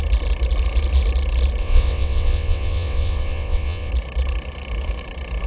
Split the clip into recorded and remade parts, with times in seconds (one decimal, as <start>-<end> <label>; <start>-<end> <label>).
0.0-1.6 recorded; 1.6-3.9 remade; 3.9-5.5 recorded